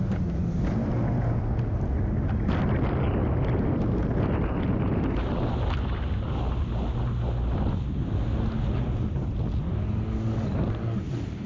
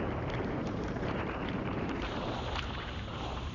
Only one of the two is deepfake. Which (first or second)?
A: second